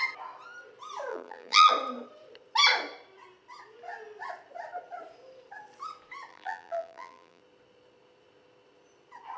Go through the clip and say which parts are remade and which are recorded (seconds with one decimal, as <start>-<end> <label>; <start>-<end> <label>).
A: 0.0-1.1 recorded; 1.1-1.7 remade; 1.7-6.3 recorded; 6.3-7.4 remade; 7.4-9.4 recorded